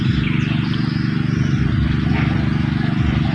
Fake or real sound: real